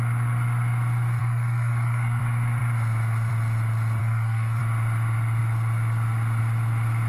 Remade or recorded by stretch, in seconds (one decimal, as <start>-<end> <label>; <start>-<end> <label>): 0.0-1.2 recorded; 1.2-2.2 remade; 2.2-4.0 recorded; 4.0-4.6 remade; 4.6-7.1 recorded